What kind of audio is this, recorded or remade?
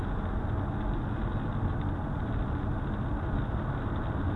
recorded